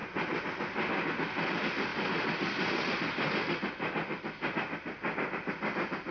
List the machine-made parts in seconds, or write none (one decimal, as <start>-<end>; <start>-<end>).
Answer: none